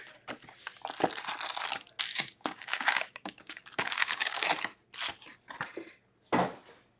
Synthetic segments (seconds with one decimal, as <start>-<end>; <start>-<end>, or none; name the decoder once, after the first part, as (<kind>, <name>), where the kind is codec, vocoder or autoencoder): 2.1-4.5 (codec, DAC)